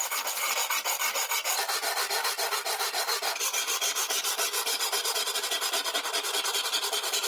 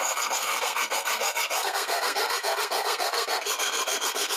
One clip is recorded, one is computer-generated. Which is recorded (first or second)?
first